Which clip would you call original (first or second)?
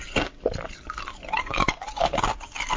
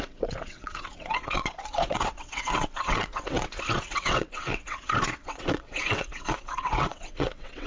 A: first